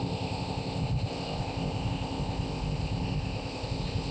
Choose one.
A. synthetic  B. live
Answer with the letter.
A